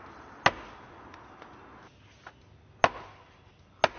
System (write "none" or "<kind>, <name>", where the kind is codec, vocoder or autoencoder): none